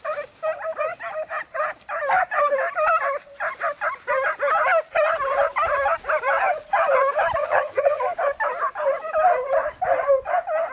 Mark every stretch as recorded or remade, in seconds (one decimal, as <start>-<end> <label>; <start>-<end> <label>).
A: 0.0-7.4 recorded; 7.4-8.0 remade; 8.0-10.7 recorded